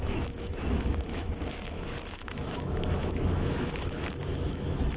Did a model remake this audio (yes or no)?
yes